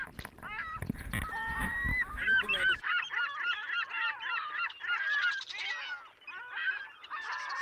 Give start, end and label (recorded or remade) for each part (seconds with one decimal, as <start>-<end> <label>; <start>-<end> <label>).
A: 0.0-3.6 remade; 3.6-5.5 recorded; 5.5-7.6 remade